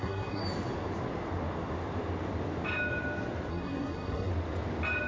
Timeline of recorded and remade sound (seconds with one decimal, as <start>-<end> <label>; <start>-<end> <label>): 0.0-0.4 remade; 0.4-3.5 recorded; 3.5-4.3 remade; 4.3-5.1 recorded